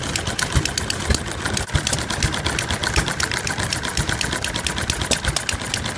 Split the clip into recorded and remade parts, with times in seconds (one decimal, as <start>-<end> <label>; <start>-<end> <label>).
0.0-2.8 recorded; 2.8-4.6 remade; 4.6-6.0 recorded